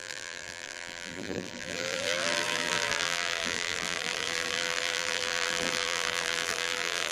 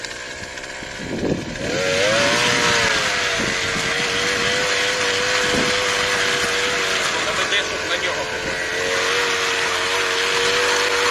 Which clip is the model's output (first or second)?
first